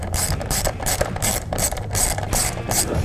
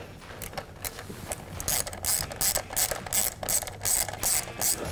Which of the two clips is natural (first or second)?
second